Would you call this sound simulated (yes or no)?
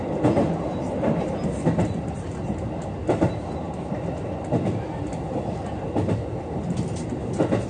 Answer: no